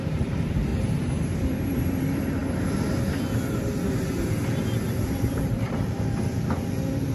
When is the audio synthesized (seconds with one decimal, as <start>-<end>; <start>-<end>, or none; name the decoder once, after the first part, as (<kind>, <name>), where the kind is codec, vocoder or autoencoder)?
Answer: 0.0-0.7 (vocoder, BigVGAN v2); 1.4-2.4; 5.0-7.1